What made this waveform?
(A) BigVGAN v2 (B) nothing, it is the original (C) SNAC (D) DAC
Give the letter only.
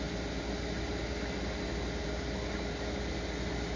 B